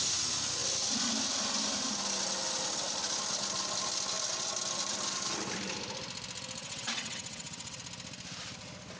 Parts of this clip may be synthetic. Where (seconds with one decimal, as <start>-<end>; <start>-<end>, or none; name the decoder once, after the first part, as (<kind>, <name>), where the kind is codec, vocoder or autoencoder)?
6.6-7.8 (vocoder, WaveNeXt)